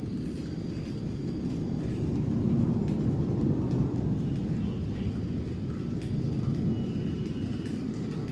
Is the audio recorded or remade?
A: recorded